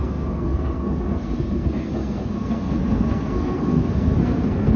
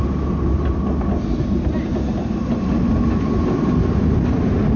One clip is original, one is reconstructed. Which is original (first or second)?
second